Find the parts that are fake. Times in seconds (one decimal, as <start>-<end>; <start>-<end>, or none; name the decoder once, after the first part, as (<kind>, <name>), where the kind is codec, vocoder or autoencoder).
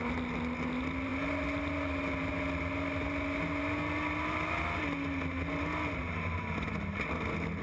none